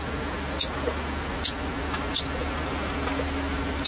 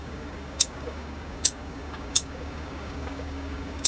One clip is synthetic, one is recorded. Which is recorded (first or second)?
first